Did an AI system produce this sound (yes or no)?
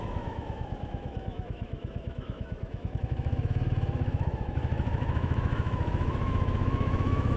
yes